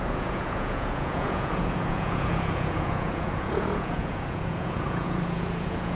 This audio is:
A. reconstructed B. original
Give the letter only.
A